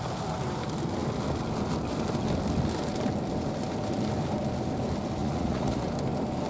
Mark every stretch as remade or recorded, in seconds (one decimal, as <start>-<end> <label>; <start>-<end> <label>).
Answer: 0.0-5.2 recorded; 5.2-5.9 remade; 5.9-6.5 recorded

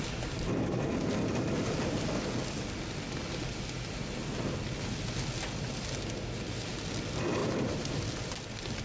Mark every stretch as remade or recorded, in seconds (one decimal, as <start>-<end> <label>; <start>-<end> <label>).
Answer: 0.0-7.4 recorded; 7.4-8.0 remade; 8.0-8.8 recorded

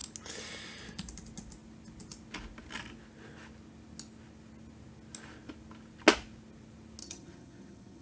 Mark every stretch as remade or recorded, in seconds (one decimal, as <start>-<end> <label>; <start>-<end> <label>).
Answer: 0.0-7.0 recorded; 7.0-8.0 remade

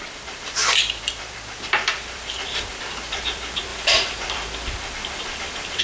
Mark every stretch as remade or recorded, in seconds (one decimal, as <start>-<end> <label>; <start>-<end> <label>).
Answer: 0.0-5.8 remade

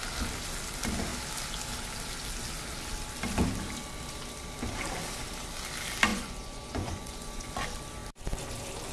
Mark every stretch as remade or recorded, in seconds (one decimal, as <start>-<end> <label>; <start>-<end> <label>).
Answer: 0.0-6.1 recorded; 6.1-7.5 remade; 7.5-8.9 recorded

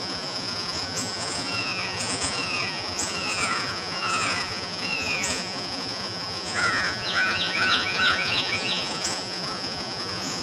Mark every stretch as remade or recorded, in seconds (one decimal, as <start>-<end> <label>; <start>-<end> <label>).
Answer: 0.0-10.4 remade